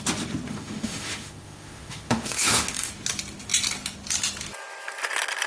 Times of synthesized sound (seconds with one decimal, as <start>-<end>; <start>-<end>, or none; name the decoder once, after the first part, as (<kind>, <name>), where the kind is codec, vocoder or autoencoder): 0.5-2.9 (autoencoder, DAC-VAE)